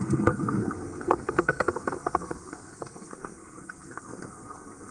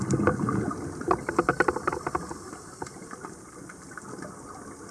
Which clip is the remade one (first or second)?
first